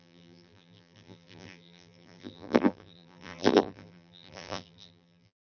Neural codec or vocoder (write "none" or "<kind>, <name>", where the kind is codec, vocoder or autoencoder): vocoder, BigVGAN v2